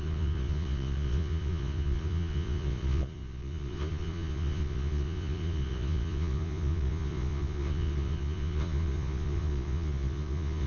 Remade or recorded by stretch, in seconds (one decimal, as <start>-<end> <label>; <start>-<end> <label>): 0.0-10.7 remade